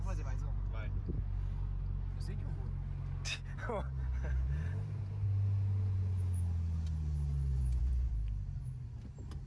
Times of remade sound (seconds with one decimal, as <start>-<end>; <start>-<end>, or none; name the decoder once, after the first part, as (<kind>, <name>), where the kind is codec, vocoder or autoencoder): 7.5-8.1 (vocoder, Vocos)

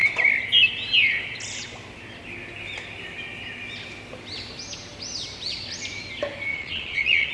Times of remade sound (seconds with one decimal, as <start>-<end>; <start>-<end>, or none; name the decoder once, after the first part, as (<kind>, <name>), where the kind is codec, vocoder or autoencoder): 6.5-7.3 (vocoder, Vocos)

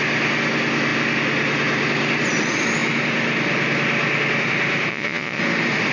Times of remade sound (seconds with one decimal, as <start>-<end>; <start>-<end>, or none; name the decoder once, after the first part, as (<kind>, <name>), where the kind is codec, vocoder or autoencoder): 4.9-5.4 (vocoder, Vocos)